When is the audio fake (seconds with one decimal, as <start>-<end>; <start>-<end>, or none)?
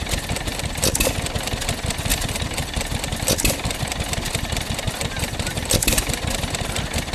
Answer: 2.1-6.4